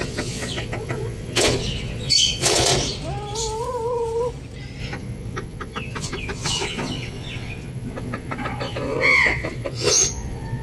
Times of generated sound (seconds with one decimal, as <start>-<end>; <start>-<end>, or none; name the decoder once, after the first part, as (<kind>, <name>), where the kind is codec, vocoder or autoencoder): 0.0-2.7 (vocoder, Vocos); 4.8-10.6